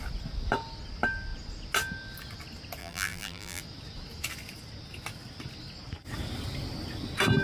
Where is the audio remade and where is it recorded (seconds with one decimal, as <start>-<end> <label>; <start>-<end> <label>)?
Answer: 0.0-2.8 recorded; 2.8-3.6 remade; 3.6-7.4 recorded